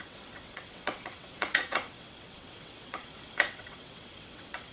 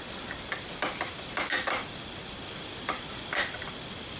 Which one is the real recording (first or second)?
second